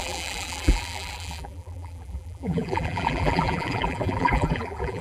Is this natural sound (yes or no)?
no